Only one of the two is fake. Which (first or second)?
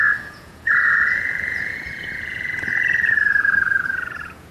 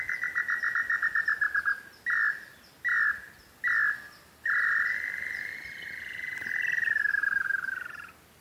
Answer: first